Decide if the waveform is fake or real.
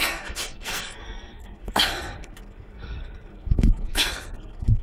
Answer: fake